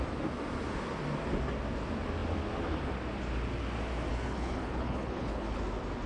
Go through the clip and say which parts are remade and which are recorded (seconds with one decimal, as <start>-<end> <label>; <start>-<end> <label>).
0.0-4.1 recorded; 4.1-5.6 remade; 5.6-6.1 recorded